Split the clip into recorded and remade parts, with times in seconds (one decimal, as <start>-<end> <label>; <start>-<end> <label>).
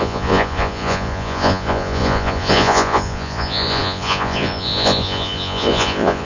0.0-6.2 remade